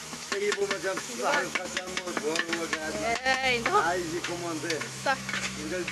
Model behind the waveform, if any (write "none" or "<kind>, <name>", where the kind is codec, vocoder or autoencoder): autoencoder, DAC-VAE